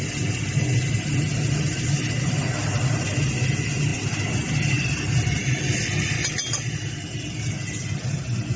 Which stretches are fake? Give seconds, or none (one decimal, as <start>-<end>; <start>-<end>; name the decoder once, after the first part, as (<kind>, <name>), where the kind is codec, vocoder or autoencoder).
none